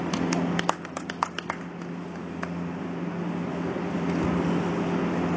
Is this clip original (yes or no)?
yes